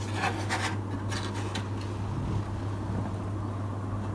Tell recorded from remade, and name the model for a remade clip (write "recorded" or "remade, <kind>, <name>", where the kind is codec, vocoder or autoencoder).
recorded